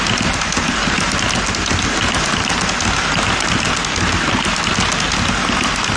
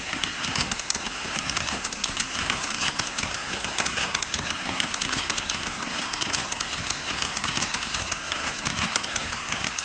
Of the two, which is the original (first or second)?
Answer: first